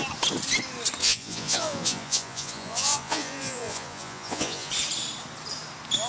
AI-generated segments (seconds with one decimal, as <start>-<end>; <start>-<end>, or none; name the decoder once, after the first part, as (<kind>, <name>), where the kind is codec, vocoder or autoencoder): 1.0-4.7 (vocoder, Vocos)